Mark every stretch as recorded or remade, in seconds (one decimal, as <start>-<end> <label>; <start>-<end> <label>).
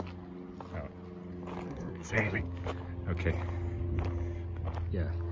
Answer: 0.0-1.7 recorded; 1.7-2.4 remade; 2.4-5.3 recorded